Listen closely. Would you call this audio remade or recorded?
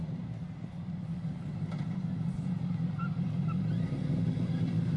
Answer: recorded